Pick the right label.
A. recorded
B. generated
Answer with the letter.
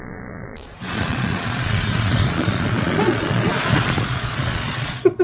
B